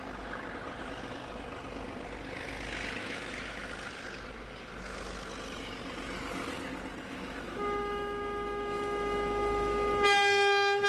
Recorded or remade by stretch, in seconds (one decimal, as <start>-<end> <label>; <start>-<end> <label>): 0.0-3.0 recorded; 3.0-3.7 remade; 3.7-7.1 recorded; 7.1-10.9 remade